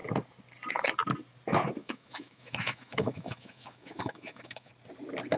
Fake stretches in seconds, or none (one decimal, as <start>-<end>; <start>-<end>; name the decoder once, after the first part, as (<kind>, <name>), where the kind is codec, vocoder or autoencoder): 1.8-4.7 (autoencoder, DAC-VAE)